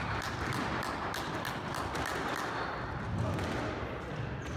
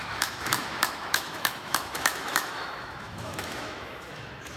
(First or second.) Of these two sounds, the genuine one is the first